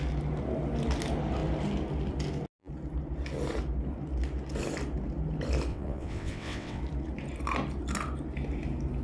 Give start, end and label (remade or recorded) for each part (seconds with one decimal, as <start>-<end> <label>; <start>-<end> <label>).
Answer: 0.0-5.7 recorded; 5.7-6.8 remade; 6.8-9.0 recorded